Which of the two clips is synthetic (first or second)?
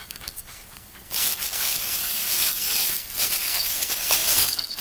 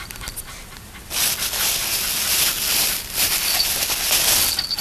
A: first